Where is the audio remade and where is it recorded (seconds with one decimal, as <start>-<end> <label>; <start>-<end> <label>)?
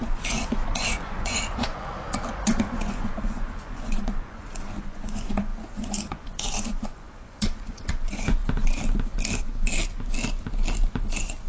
0.0-8.4 remade; 8.4-11.1 recorded; 11.1-11.5 remade